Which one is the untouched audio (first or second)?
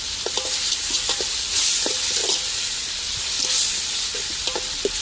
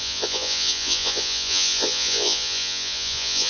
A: first